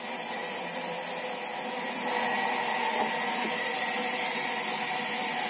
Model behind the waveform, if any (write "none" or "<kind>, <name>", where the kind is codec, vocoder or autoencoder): none